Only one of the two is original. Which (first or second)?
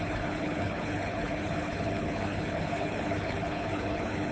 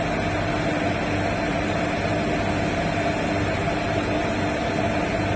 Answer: second